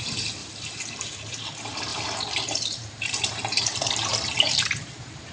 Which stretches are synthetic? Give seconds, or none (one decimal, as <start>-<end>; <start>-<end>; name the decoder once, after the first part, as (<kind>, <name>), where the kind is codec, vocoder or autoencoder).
0.4-1.5 (vocoder, BigVGAN v2); 1.9-5.3